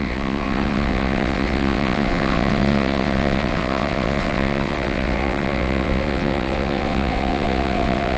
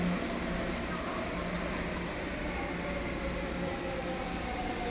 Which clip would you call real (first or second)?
second